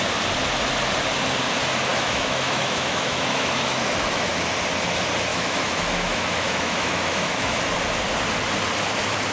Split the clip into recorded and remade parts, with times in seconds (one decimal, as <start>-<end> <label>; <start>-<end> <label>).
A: 0.0-1.9 recorded; 1.9-4.3 remade; 4.3-5.3 recorded; 5.3-7.6 remade; 7.6-9.3 recorded